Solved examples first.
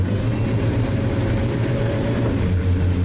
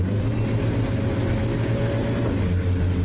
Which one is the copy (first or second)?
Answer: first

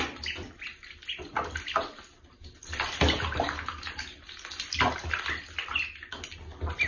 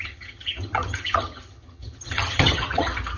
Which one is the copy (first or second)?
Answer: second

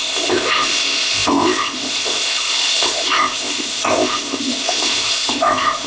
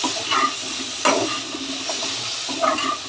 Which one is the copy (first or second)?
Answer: first